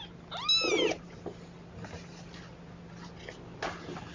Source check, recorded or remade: recorded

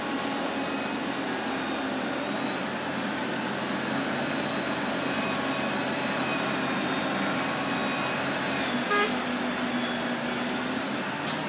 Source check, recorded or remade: recorded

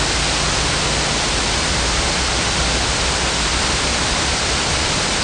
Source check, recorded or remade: recorded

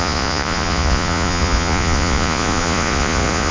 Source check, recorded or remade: remade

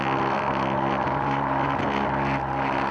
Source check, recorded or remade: recorded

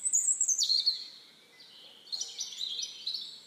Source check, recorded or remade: recorded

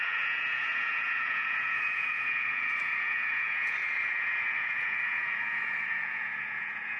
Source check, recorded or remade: remade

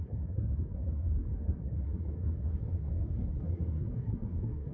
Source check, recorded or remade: remade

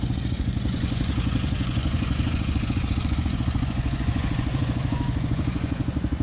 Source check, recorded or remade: remade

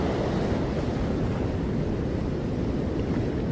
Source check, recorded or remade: recorded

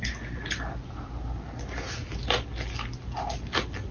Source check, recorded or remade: recorded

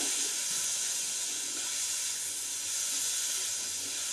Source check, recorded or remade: remade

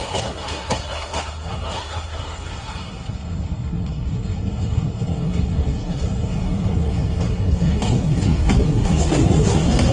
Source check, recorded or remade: remade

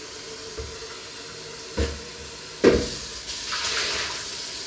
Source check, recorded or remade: recorded